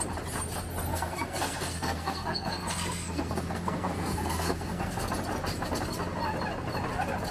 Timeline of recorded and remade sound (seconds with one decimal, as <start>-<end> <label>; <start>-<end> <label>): 0.0-0.9 recorded; 0.9-5.1 remade; 5.1-7.3 recorded